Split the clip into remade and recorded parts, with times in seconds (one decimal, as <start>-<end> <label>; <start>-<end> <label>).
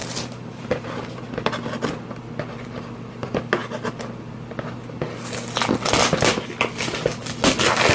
0.0-1.2 remade; 1.2-7.9 recorded